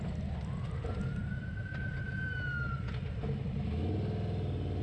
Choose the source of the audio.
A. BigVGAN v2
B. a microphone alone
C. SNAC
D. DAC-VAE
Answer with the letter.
B